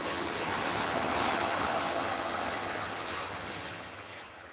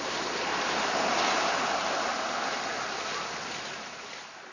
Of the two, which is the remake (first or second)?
first